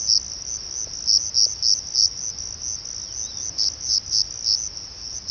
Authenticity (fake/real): real